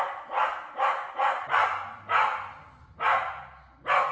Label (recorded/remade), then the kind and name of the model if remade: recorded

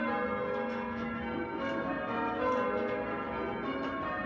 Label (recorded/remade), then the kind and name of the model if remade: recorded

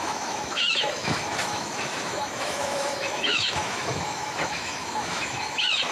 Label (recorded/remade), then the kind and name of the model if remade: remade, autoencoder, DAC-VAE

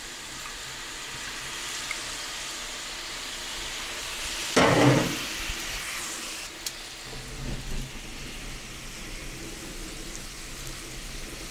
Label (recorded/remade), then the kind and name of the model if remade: recorded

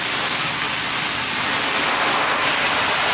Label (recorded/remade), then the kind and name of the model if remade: recorded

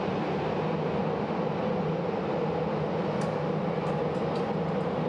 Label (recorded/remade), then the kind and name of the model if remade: recorded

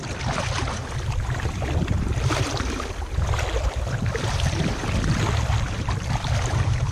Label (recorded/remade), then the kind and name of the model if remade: recorded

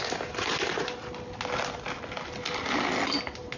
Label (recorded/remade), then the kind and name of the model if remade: recorded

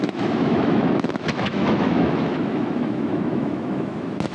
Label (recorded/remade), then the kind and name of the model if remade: remade, autoencoder, DAC-VAE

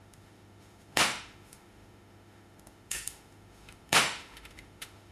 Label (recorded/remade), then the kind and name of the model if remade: remade, autoencoder, DAC-VAE